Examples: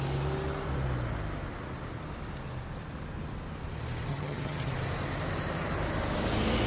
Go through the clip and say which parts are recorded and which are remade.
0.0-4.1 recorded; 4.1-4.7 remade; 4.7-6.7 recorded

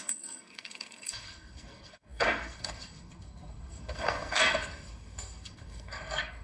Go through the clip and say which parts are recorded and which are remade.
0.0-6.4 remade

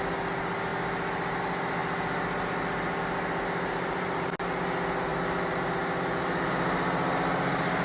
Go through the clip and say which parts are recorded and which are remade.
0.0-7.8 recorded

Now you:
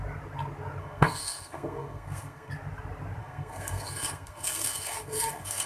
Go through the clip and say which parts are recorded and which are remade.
0.0-0.8 recorded; 0.8-2.5 remade; 2.5-3.2 recorded; 3.2-5.7 remade

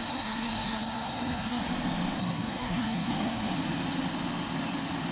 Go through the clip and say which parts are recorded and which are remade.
0.0-1.6 remade; 1.6-2.2 recorded; 2.2-3.5 remade; 3.5-5.1 recorded